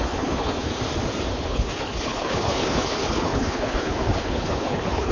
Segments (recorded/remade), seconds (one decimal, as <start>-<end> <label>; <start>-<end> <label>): 0.0-0.7 remade; 0.7-1.3 recorded; 1.3-5.1 remade